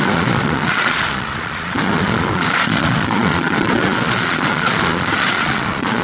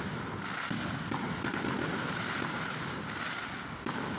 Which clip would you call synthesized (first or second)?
first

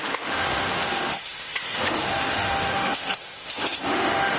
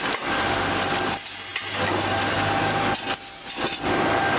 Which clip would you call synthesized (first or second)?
first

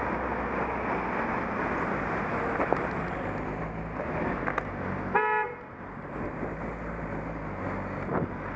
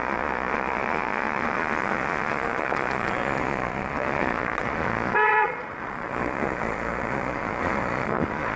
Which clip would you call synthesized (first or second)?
second